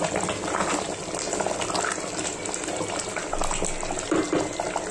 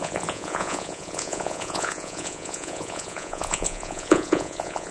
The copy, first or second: second